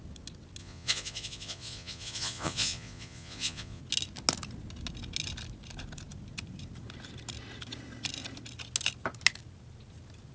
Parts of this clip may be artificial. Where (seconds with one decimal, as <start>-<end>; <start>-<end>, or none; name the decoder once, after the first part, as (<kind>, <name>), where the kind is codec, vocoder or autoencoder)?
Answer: 0.6-3.8 (vocoder, Vocos)